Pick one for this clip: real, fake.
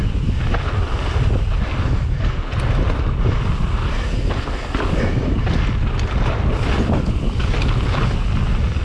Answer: real